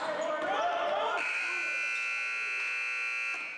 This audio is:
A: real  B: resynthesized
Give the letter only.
A